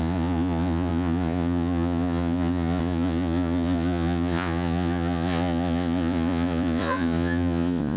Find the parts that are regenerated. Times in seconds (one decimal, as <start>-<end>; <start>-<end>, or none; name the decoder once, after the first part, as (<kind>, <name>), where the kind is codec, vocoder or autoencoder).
0.0-8.0 (vocoder, Vocos)